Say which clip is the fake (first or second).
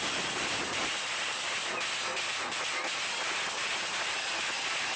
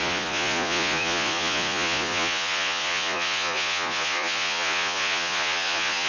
second